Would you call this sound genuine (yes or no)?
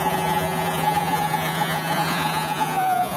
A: no